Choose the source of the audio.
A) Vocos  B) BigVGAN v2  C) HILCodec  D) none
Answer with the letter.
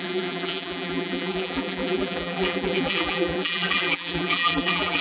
B